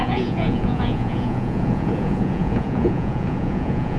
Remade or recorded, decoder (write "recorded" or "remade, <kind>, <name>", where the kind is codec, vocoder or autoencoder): remade, vocoder, Vocos